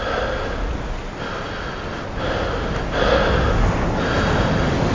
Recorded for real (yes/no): yes